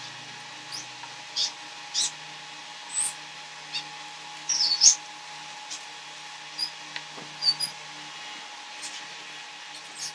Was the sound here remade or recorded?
recorded